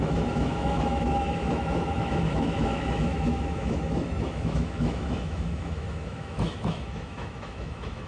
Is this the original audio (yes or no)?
no